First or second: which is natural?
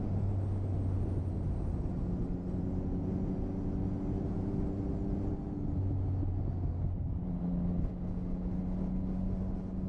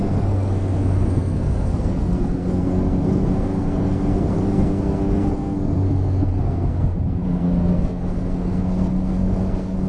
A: first